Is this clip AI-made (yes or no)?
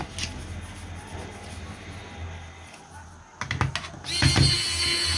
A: no